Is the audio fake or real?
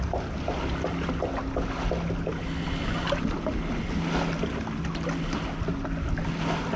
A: real